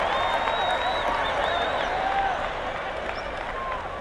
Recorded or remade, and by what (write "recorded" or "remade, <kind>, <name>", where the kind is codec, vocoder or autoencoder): recorded